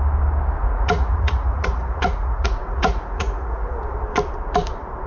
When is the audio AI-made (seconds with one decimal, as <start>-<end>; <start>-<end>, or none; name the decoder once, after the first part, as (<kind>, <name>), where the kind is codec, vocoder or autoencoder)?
0.6-3.7 (vocoder, Vocos)